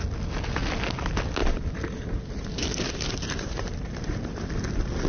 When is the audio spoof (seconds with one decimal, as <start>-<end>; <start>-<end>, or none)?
1.4-4.5